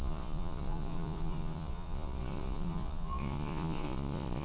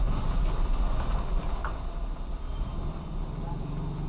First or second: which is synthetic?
first